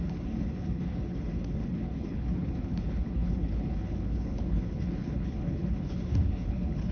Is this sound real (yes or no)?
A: no